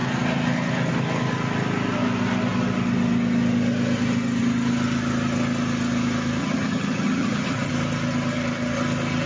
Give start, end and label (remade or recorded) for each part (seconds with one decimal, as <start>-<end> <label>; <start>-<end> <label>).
0.0-6.4 recorded; 6.4-7.7 remade; 7.7-9.3 recorded